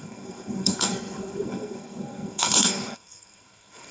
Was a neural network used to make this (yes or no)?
yes